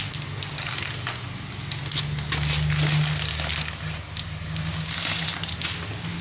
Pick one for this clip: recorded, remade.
recorded